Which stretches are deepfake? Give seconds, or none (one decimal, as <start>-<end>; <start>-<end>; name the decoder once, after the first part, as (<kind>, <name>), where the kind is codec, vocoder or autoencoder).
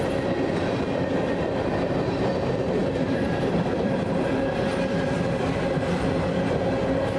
2.8-4.5 (vocoder, BigVGAN v2)